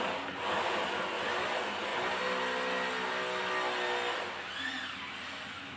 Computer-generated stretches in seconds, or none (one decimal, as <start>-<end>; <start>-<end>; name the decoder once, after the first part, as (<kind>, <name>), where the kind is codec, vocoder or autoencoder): none